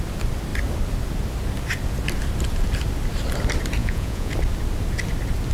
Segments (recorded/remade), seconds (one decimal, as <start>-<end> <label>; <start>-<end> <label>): 0.0-3.8 recorded; 3.8-4.3 remade; 4.3-5.5 recorded